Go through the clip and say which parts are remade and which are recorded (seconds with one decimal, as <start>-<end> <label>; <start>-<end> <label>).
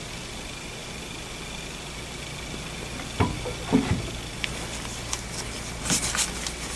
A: 0.0-6.8 recorded